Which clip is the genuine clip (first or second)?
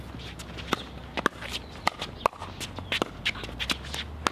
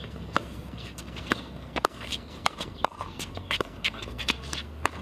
first